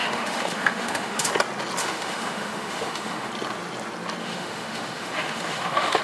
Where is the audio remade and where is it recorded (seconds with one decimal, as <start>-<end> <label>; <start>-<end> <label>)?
0.0-1.3 remade; 1.3-1.8 recorded; 1.8-3.3 remade; 3.3-4.2 recorded; 4.2-6.0 remade